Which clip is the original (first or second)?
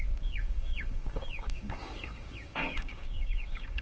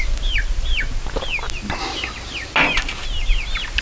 second